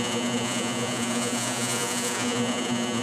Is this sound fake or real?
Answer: fake